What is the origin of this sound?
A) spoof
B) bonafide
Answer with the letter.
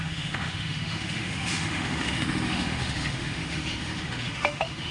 A